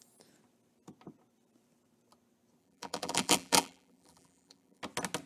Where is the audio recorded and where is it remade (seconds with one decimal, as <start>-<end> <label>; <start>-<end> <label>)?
0.0-2.6 recorded; 2.6-4.8 remade; 4.8-5.3 recorded

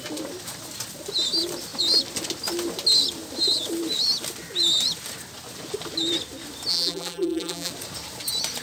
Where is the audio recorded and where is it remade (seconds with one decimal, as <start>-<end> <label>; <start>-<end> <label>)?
0.0-6.7 recorded; 6.7-7.7 remade; 7.7-8.6 recorded

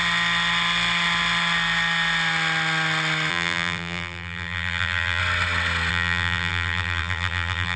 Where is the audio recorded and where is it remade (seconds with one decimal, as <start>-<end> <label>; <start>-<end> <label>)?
0.0-3.3 recorded; 3.3-5.2 remade; 5.2-5.9 recorded; 5.9-7.8 remade

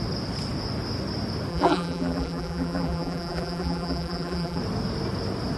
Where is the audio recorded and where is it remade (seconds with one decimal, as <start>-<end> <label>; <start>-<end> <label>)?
0.0-1.5 recorded; 1.5-4.6 remade; 4.6-5.6 recorded